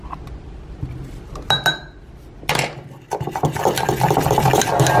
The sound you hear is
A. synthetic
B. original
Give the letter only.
B